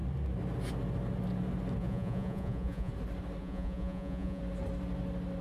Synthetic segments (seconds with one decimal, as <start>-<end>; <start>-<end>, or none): 1.8-2.9; 3.4-4.4